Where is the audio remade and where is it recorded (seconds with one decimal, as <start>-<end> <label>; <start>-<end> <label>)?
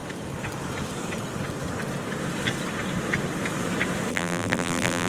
0.0-4.1 recorded; 4.1-5.1 remade